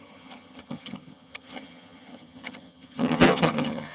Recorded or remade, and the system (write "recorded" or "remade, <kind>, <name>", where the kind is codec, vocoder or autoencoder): remade, vocoder, HiFi-GAN